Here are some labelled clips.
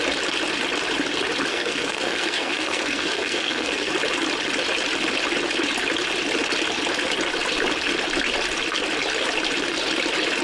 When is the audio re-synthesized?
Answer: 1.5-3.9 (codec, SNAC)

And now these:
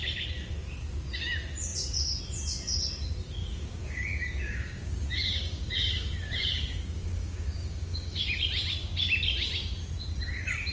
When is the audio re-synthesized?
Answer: 3.4-8.4 (codec, DAC)

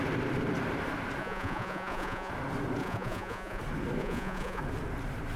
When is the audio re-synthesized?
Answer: 1.2-2.3 (vocoder, Vocos); 2.8-3.6; 4.0-4.6

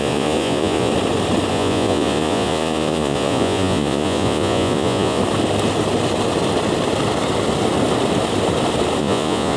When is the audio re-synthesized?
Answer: 0.0-0.9 (vocoder, Vocos); 1.5-5.2; 9.0-9.6